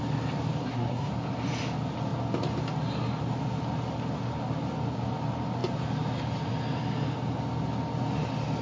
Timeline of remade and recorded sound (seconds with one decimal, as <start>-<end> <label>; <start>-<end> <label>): 0.0-0.6 recorded; 0.6-1.1 remade; 1.1-8.6 recorded

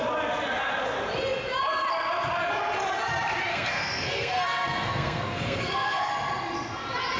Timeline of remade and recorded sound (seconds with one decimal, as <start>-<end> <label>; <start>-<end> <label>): 0.0-3.5 recorded; 3.5-6.1 remade; 6.1-7.2 recorded

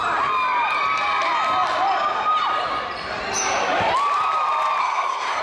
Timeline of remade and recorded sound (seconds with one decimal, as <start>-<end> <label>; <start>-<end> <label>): 0.0-4.8 recorded; 4.8-5.4 remade

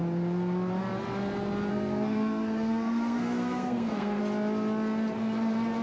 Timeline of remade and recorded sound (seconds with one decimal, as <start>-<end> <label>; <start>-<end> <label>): 0.0-1.7 recorded; 1.7-4.2 remade; 4.2-5.8 recorded